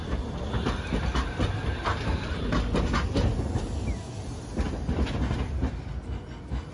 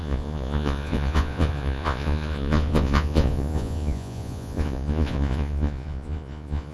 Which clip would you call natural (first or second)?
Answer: first